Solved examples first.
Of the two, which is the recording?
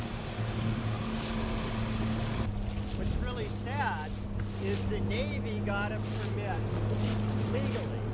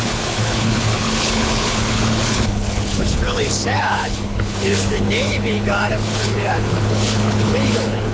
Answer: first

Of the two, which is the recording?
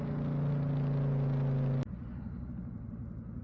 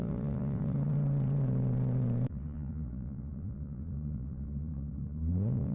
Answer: first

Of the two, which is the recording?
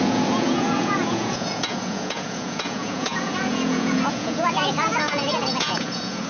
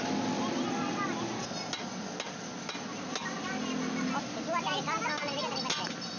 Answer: second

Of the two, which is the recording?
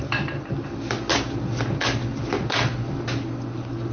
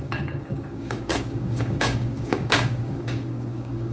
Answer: first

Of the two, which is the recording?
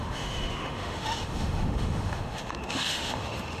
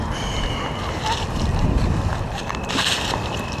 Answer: second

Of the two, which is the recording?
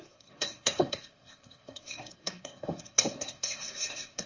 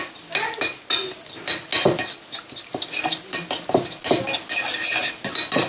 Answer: second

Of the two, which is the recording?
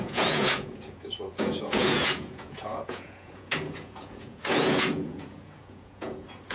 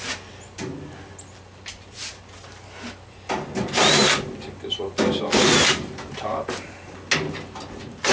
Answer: second